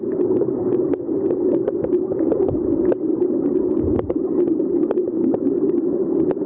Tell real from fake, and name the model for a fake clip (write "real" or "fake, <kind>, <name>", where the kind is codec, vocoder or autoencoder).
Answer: real